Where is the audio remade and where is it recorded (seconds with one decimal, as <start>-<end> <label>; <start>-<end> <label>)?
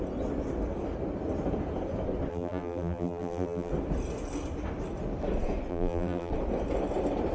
0.0-2.3 recorded; 2.3-3.7 remade; 3.7-5.7 recorded; 5.7-6.3 remade; 6.3-7.3 recorded